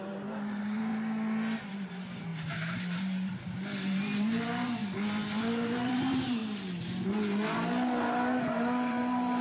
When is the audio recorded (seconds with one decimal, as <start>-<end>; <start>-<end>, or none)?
0.9-1.7; 4.8-5.4; 6.4-8.4